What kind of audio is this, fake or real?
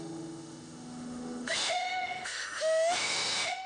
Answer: fake